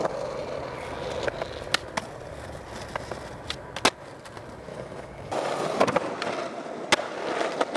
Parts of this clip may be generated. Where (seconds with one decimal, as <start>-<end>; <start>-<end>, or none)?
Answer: 4.7-5.3